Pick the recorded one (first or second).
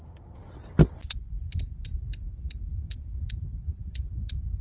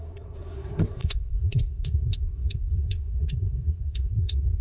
first